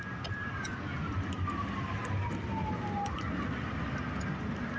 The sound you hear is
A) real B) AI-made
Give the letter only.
A